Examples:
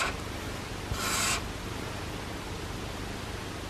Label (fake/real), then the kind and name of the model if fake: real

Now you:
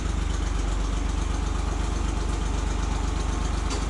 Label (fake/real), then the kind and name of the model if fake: real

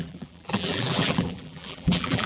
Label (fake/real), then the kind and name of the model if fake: fake, vocoder, BigVGAN v2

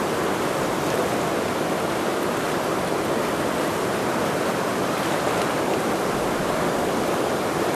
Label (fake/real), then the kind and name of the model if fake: fake, vocoder, BigVGAN v2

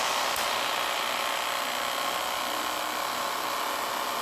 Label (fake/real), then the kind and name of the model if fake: real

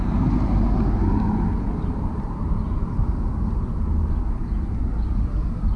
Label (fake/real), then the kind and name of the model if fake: real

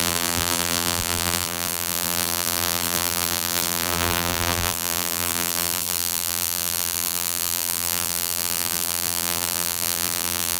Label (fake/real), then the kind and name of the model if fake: fake, vocoder, BigVGAN v2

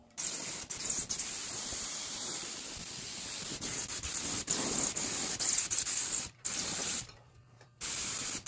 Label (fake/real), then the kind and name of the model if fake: fake, vocoder, BigVGAN v2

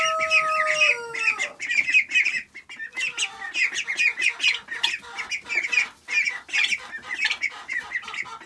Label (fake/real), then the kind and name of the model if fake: real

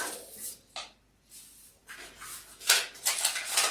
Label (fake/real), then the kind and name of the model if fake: real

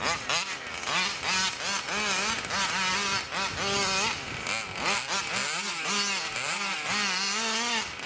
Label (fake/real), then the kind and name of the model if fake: real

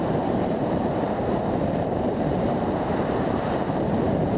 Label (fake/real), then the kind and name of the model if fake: fake, vocoder, BigVGAN v2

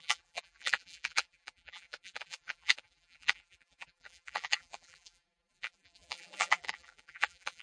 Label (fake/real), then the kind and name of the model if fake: fake, vocoder, BigVGAN v2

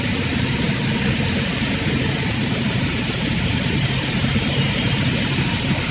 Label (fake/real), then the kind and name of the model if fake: fake, vocoder, BigVGAN v2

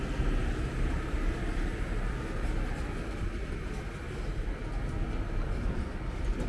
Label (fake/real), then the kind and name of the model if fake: real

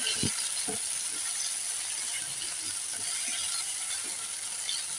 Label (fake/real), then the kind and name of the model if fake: real